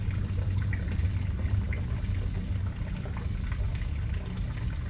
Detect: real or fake real